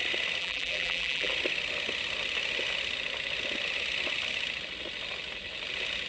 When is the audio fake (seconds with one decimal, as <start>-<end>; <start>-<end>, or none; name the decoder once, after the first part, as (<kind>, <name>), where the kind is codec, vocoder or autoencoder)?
0.4-1.3 (vocoder, BigVGAN v2)